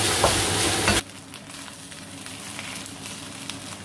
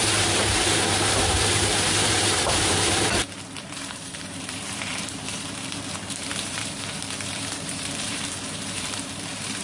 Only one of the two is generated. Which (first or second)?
second